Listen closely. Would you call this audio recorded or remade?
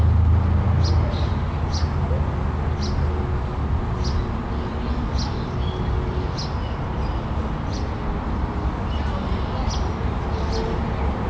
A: recorded